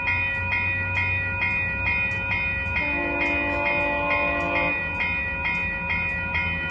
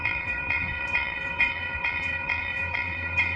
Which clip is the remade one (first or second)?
second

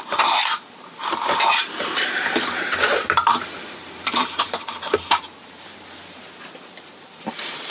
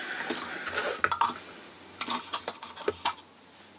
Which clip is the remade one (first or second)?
first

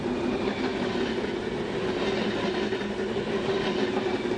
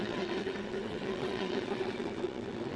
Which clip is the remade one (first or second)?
second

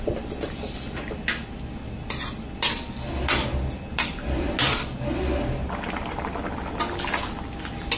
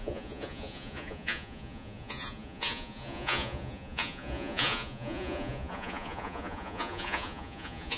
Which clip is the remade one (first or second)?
second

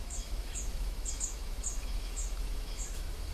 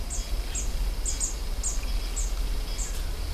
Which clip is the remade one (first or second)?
first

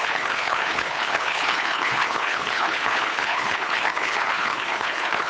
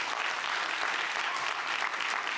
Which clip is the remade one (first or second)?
first